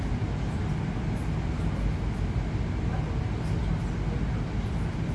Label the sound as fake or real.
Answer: real